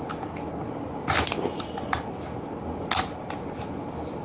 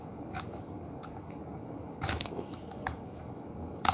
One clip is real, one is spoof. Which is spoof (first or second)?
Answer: second